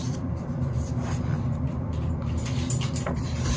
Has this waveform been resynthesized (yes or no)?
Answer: yes